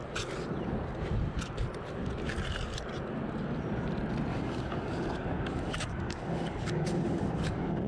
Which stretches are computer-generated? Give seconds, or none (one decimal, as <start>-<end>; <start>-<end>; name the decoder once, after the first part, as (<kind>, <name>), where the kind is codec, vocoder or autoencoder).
4.3-7.9 (codec, DAC)